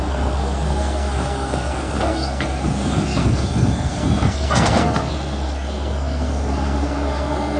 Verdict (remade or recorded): remade